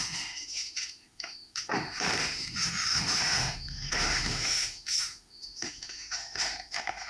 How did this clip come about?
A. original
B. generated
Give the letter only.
B